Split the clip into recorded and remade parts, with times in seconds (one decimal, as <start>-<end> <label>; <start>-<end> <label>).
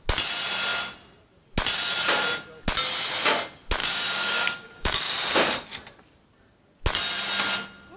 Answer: 0.0-3.8 recorded; 3.8-5.1 remade; 5.1-8.0 recorded